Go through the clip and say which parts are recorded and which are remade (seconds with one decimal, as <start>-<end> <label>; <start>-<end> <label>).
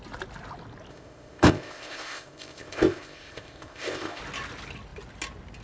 0.0-0.9 recorded; 0.9-4.2 remade; 4.2-5.6 recorded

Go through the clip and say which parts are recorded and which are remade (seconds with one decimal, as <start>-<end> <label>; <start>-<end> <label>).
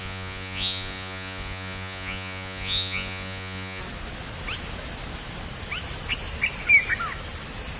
0.0-3.8 remade; 3.8-7.8 recorded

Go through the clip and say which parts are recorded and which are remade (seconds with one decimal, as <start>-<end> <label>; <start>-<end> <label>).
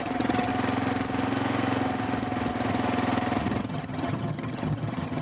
0.0-0.5 remade; 0.5-3.6 recorded; 3.6-5.2 remade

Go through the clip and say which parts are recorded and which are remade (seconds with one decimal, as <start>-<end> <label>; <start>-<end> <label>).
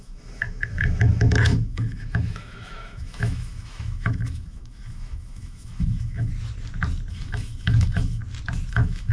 0.0-6.3 remade; 6.3-7.1 recorded; 7.1-8.2 remade; 8.2-8.7 recorded; 8.7-9.1 remade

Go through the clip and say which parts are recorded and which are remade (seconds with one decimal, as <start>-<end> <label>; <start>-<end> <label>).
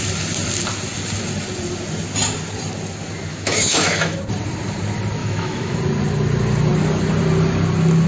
0.0-3.3 recorded; 3.3-4.2 remade; 4.2-5.2 recorded; 5.2-5.8 remade; 5.8-8.1 recorded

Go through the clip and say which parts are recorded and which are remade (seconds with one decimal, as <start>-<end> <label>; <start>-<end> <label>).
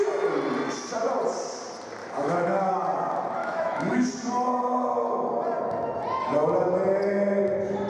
0.0-2.0 recorded; 2.0-2.7 remade; 2.7-3.4 recorded; 3.4-4.1 remade; 4.1-7.9 recorded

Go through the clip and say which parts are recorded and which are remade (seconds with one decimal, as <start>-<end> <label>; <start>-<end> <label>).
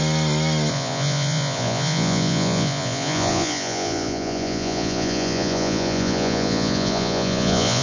0.0-0.7 recorded; 0.7-7.8 remade